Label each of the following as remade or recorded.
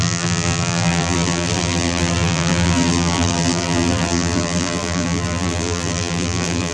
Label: remade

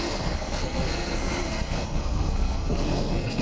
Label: remade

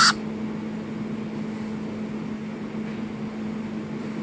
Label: recorded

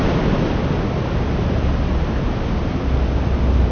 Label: recorded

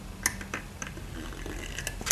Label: recorded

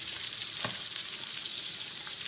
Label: remade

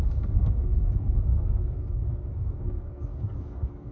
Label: remade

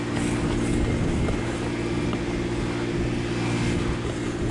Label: recorded